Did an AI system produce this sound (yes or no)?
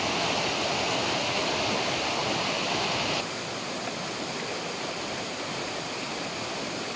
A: no